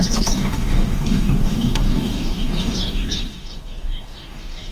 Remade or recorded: remade